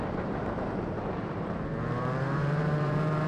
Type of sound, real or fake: fake